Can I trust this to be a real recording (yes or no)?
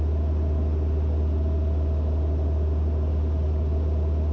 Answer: yes